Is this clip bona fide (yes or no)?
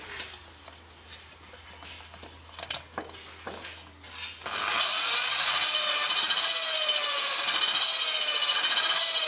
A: yes